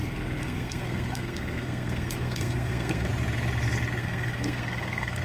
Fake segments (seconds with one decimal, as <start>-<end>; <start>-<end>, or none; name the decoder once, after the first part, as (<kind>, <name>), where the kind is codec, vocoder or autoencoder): 0.0-3.1 (codec, SNAC); 4.0-5.2